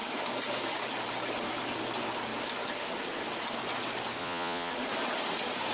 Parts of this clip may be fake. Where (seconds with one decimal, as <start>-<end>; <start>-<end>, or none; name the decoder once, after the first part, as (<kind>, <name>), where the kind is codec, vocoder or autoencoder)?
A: 4.2-4.7 (vocoder, Vocos)

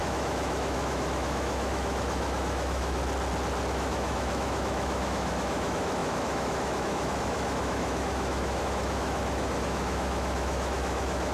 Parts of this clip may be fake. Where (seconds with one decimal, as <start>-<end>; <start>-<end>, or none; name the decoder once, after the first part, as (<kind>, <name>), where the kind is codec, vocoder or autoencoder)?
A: 0.0-3.0 (autoencoder, DAC-VAE); 3.7-11.3

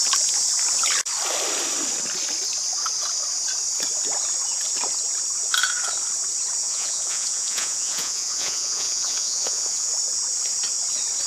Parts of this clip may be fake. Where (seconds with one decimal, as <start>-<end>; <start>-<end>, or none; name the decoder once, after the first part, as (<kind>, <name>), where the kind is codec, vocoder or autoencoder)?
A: 6.6-9.9 (vocoder, Vocos)

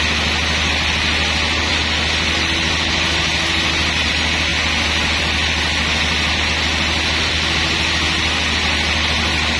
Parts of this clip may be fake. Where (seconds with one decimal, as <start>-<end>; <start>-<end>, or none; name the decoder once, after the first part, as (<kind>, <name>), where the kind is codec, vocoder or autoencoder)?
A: none

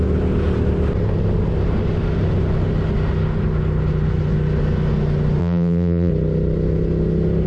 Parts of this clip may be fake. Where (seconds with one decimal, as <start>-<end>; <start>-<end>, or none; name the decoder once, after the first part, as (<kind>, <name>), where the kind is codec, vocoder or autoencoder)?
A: 5.4-6.1 (vocoder, BigVGAN v2)

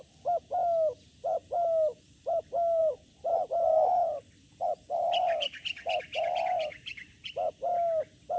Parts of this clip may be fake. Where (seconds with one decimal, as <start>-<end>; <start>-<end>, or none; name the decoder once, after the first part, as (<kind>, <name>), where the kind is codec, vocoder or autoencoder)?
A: 2.8-5.4 (vocoder, BigVGAN v2)

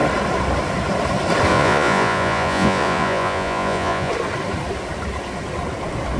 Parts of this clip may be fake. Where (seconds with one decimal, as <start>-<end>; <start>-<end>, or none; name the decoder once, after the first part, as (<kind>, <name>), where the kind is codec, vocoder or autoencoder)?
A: 1.5-4.1 (vocoder, Vocos)